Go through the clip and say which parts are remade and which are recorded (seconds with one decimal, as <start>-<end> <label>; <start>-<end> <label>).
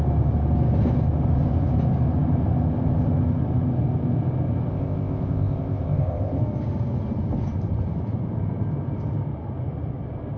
0.0-4.7 recorded; 4.7-6.4 remade; 6.4-10.4 recorded